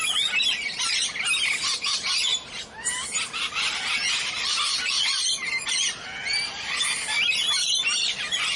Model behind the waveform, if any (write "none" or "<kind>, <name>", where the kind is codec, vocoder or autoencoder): none